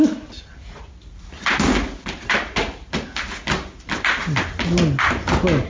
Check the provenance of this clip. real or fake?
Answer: real